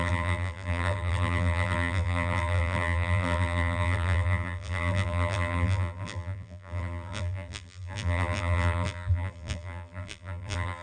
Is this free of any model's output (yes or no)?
no